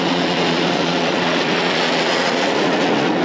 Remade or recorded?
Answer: remade